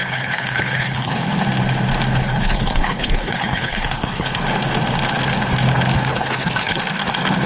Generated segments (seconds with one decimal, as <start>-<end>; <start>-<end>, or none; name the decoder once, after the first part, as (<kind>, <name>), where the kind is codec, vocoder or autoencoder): 0.0-1.2 (codec, HILCodec); 2.1-4.4; 6.1-6.8